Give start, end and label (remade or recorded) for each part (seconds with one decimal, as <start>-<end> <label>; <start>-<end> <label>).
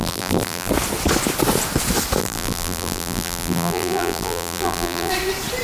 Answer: 0.0-0.7 remade; 0.7-2.2 recorded; 2.2-5.1 remade; 5.1-5.6 recorded